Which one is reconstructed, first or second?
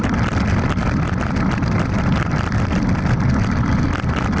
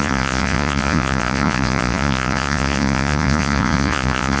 second